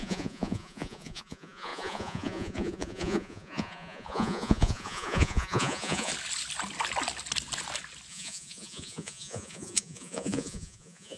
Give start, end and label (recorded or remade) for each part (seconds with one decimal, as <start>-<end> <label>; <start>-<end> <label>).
0.0-6.1 remade; 6.1-8.1 recorded; 8.1-11.2 remade